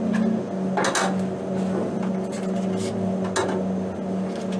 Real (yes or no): yes